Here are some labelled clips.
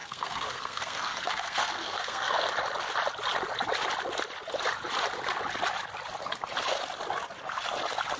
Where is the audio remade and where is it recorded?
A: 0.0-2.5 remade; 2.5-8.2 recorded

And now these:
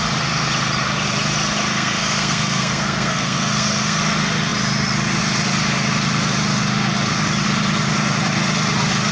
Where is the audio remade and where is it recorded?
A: 0.0-1.7 recorded; 1.7-4.0 remade; 4.0-9.1 recorded

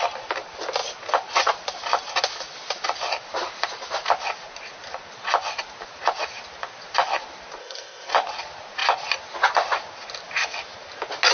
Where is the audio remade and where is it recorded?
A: 0.0-7.6 recorded; 7.6-8.1 remade; 8.1-11.3 recorded

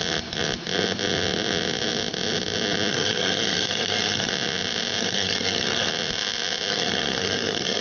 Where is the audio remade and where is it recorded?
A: 0.0-2.9 recorded; 2.9-4.3 remade; 4.3-5.0 recorded; 5.0-5.9 remade; 5.9-6.7 recorded; 6.7-7.8 remade

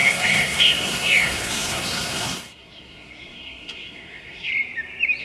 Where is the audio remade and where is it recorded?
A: 0.0-4.5 remade; 4.5-5.2 recorded